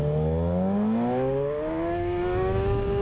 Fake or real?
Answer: fake